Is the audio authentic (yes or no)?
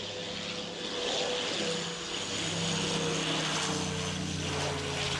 yes